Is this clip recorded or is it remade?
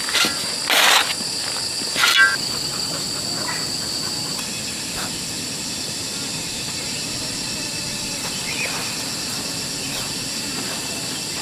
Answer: recorded